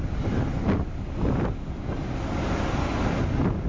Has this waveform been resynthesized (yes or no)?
no